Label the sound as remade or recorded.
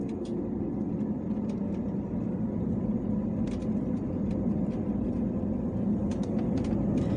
recorded